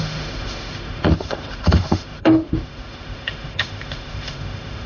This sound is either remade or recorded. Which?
remade